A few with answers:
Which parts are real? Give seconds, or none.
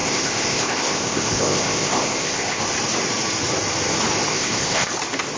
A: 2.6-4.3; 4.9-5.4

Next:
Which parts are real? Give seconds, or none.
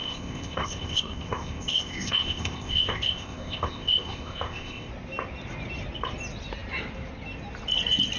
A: 4.9-8.2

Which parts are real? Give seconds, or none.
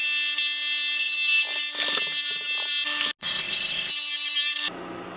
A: 0.0-3.2; 3.9-5.2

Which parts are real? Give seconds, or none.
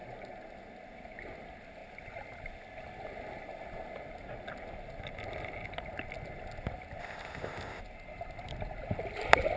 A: 0.0-7.0; 7.8-9.6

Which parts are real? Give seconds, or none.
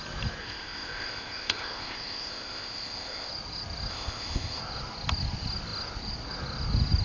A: 0.0-0.4; 3.3-3.9; 4.6-7.0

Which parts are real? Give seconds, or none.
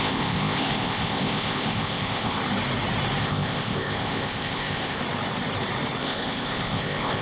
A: 2.4-3.2; 5.0-6.0